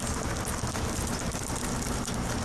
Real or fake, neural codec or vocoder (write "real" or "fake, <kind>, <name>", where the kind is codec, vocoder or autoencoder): real